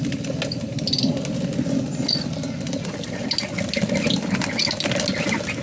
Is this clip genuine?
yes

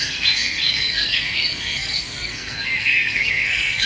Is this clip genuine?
no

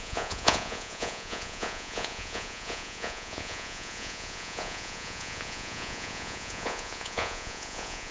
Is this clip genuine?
no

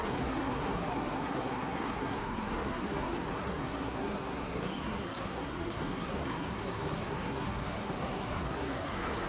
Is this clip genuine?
no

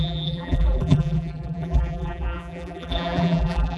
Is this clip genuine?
no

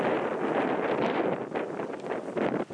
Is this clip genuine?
yes